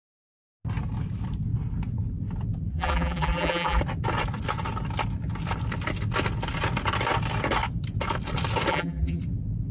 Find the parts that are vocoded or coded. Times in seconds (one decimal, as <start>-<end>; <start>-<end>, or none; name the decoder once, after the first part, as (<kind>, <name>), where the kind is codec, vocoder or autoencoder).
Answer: 2.7-3.8 (vocoder, BigVGAN v2); 8.7-9.2